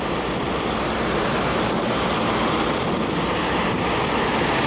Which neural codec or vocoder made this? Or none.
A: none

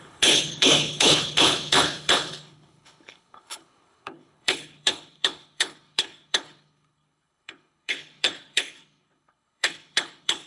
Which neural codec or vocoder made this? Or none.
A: codec, HILCodec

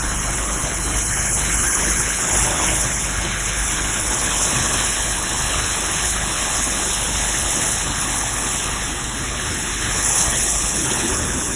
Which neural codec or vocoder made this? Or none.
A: codec, HILCodec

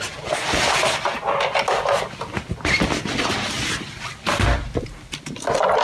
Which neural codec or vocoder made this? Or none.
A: none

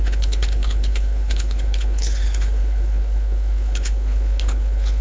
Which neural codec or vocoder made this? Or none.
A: codec, HILCodec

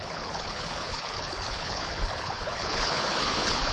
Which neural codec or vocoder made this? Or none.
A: codec, HILCodec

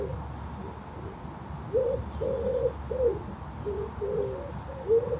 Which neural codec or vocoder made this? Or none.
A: none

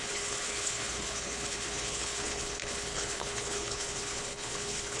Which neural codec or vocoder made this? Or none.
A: codec, HILCodec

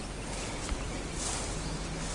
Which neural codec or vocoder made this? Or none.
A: none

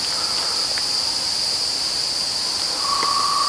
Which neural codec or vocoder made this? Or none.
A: none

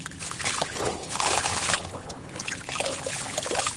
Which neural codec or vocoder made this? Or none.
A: codec, HILCodec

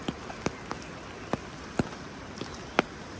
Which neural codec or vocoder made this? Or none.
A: none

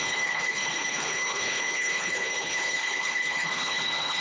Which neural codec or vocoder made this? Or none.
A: codec, HILCodec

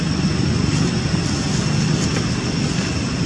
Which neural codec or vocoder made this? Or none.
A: none